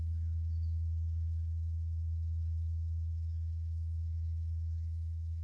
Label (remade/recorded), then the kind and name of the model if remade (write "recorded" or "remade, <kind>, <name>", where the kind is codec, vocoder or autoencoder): remade, autoencoder, DAC-VAE